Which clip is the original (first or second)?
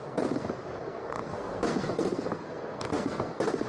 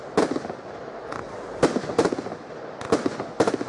second